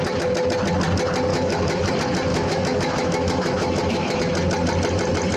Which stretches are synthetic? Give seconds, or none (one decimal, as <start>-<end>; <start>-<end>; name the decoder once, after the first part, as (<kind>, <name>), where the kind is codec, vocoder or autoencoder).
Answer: 1.3-1.9 (autoencoder, DAC-VAE); 2.3-4.2